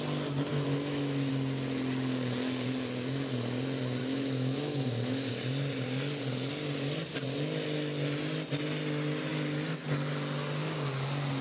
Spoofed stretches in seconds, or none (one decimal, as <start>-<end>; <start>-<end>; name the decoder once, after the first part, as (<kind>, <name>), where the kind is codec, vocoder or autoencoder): 0.5-1.3 (autoencoder, DAC-VAE); 4.0-5.3